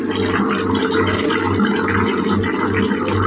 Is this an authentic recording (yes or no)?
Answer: yes